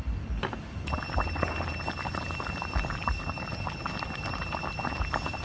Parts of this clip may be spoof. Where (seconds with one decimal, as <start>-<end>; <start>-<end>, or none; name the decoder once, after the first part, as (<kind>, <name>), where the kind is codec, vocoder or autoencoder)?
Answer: none